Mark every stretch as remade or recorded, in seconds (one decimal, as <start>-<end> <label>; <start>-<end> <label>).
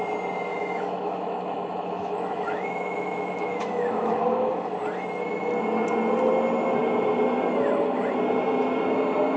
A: 0.0-0.5 recorded; 0.5-4.5 remade; 4.5-9.4 recorded